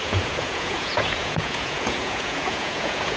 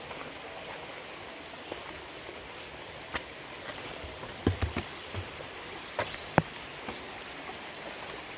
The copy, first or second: first